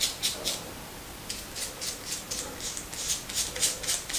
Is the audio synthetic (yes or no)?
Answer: no